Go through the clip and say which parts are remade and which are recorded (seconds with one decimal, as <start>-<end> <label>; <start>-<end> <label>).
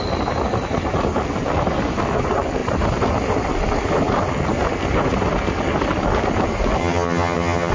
0.0-6.8 recorded; 6.8-7.7 remade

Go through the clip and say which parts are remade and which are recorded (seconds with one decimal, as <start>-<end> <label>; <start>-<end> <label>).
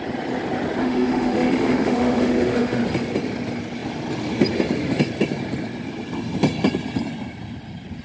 0.0-0.8 recorded; 0.8-2.8 remade; 2.8-8.0 recorded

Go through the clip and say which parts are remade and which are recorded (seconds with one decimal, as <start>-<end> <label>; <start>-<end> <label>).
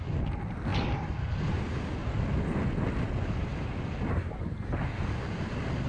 0.0-5.9 recorded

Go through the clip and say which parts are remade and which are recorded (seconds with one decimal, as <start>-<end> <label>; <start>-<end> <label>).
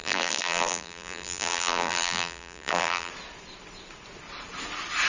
0.0-3.1 remade; 3.1-5.1 recorded